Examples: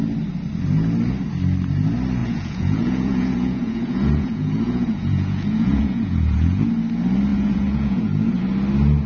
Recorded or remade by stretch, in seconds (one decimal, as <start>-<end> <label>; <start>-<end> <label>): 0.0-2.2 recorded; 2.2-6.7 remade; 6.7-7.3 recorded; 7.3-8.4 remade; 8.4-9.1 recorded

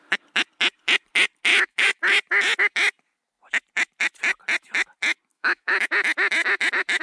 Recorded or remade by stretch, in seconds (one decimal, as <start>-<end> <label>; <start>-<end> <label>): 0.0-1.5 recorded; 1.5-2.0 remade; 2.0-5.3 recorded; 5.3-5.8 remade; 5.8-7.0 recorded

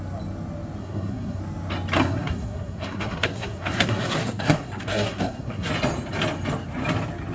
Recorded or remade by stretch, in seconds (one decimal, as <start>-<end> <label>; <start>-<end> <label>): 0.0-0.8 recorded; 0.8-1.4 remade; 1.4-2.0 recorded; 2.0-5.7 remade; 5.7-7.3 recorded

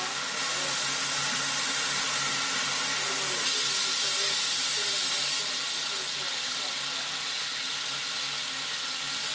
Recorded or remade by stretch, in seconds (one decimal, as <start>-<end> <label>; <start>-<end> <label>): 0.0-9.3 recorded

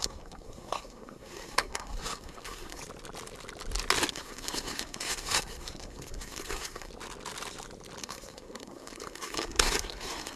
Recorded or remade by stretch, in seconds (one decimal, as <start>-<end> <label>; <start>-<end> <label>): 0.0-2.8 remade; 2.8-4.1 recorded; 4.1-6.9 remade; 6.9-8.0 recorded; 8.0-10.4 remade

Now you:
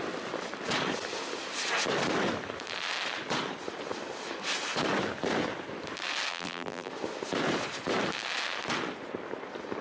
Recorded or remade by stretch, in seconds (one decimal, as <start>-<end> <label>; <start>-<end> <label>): 0.0-6.3 recorded; 6.3-6.9 remade; 6.9-9.8 recorded

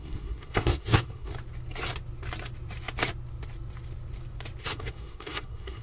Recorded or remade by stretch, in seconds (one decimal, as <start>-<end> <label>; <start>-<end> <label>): 0.0-1.3 remade; 1.3-4.6 recorded; 4.6-5.8 remade

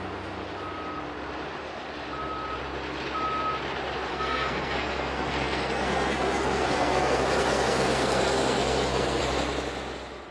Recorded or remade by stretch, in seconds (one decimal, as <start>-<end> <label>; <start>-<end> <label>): 0.0-4.1 recorded; 4.1-9.2 remade; 9.2-10.3 recorded